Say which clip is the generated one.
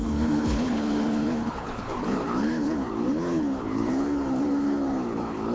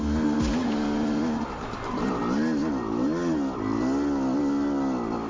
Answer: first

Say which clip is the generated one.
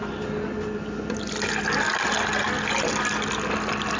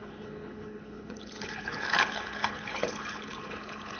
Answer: second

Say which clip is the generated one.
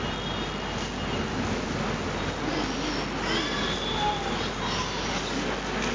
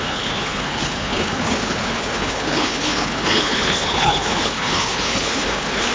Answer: second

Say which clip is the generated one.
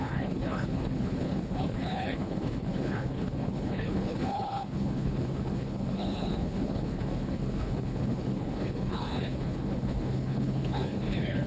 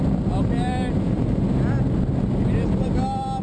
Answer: first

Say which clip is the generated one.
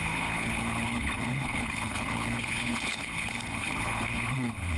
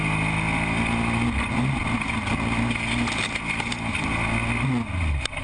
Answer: first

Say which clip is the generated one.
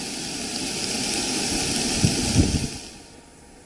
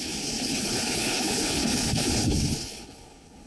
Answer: second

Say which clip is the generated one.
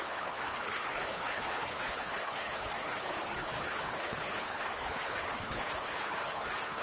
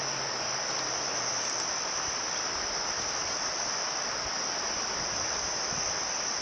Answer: first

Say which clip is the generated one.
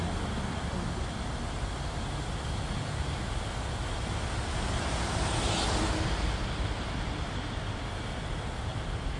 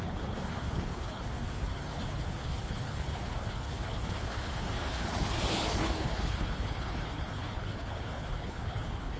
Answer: second